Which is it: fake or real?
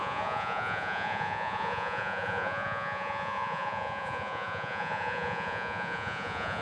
fake